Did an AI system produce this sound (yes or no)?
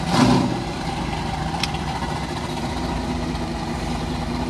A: yes